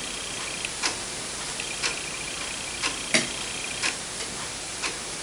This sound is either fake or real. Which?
fake